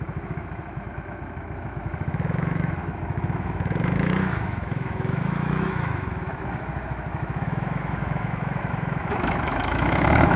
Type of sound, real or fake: fake